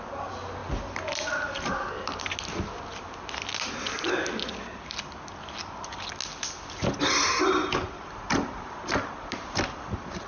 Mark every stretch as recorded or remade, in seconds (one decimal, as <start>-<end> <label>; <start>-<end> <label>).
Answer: 0.0-10.3 recorded